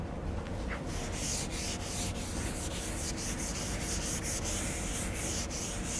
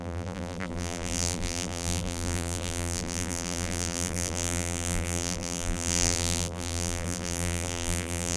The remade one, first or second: second